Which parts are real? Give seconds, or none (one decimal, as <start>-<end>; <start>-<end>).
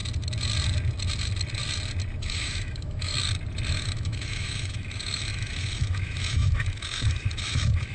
0.0-2.2; 3.1-3.7